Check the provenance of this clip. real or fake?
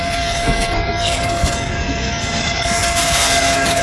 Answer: fake